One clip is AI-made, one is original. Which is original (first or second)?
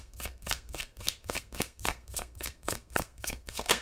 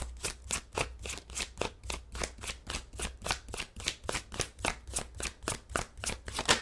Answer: second